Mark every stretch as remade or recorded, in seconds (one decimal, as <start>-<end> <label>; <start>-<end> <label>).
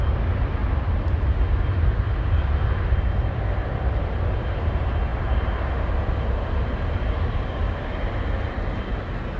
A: 0.0-9.4 recorded